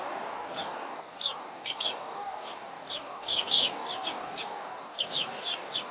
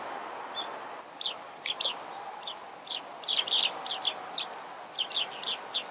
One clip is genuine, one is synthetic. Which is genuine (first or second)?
second